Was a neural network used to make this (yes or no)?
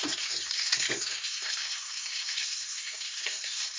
yes